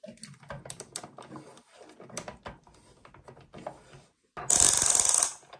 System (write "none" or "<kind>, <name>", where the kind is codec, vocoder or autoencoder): none